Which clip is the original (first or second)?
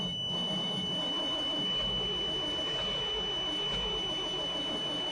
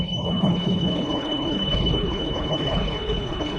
first